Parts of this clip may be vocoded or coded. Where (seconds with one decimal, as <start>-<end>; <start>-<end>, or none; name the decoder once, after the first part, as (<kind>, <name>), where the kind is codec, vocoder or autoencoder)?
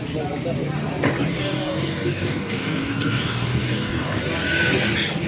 1.3-4.2 (codec, DAC)